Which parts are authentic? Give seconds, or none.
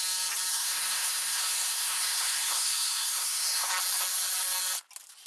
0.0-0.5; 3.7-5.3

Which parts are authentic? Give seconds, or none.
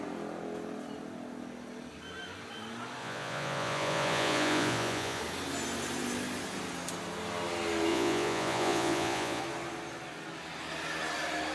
0.0-3.0; 5.2-7.9; 9.4-11.5